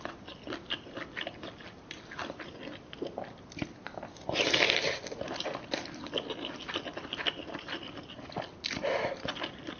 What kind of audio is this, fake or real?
real